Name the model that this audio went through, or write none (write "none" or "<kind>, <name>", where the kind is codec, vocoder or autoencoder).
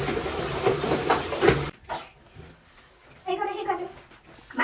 none